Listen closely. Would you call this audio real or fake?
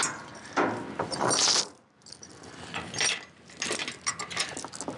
real